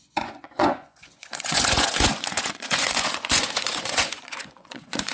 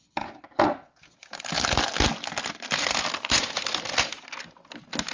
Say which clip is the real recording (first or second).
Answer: second